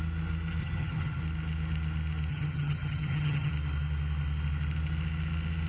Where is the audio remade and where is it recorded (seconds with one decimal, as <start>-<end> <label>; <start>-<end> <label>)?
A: 0.0-0.6 recorded; 0.6-1.2 remade; 1.2-2.3 recorded; 2.3-3.5 remade; 3.5-5.7 recorded